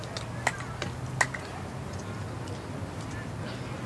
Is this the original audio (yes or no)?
yes